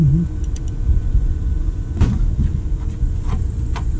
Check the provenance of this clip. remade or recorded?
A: remade